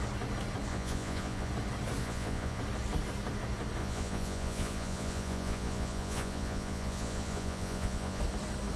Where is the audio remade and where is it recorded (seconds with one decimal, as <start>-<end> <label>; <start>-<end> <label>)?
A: 0.0-0.7 recorded; 0.7-1.5 remade; 1.5-2.0 recorded; 2.0-2.6 remade; 2.6-3.8 recorded; 3.8-8.2 remade; 8.2-8.8 recorded